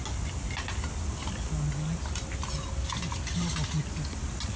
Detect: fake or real real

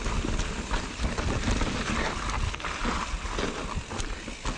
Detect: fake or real real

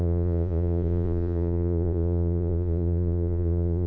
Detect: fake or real fake